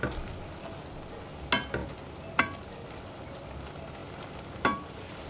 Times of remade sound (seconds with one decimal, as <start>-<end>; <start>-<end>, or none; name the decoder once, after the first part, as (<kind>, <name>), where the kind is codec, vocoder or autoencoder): none